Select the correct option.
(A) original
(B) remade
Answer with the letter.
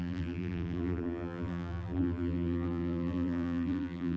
B